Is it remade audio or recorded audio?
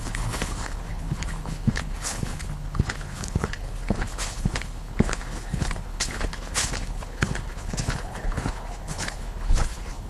remade